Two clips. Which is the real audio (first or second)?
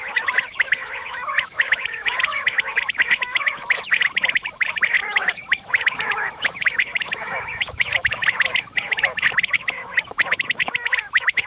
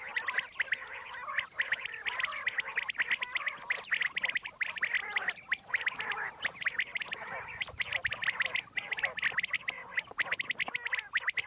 second